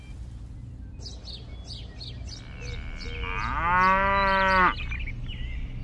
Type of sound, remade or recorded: recorded